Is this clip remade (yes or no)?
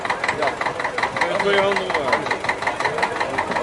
no